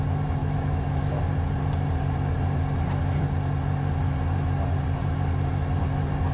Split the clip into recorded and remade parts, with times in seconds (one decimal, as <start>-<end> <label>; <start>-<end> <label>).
0.0-0.4 recorded; 0.4-1.2 remade; 1.2-6.3 recorded

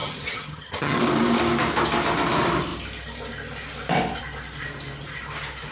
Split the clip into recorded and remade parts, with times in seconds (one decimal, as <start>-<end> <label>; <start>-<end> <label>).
0.0-1.0 remade; 1.0-5.7 recorded

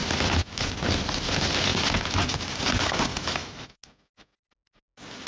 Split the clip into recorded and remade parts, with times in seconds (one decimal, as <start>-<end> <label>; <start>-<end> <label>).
0.0-3.1 recorded; 3.1-3.8 remade; 3.8-5.3 recorded

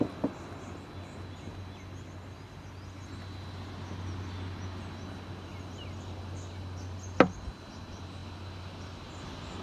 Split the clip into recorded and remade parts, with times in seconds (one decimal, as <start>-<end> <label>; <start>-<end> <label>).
0.0-9.6 recorded

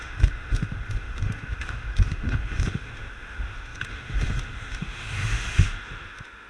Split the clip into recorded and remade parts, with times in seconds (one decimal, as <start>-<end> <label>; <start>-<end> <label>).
0.0-6.5 remade

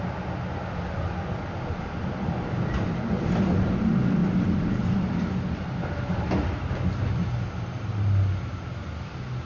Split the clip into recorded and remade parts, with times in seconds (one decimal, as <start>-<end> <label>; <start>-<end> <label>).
0.0-9.5 recorded

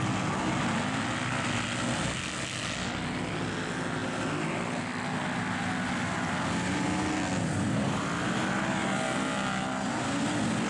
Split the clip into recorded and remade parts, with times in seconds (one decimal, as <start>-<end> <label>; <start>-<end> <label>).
0.0-10.7 recorded